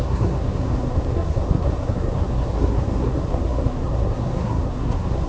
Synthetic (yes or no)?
yes